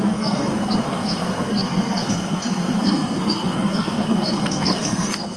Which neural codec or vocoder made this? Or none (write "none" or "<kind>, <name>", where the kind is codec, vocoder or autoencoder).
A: codec, SNAC